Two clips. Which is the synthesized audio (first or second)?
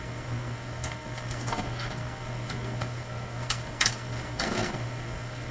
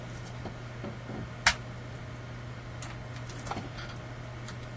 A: first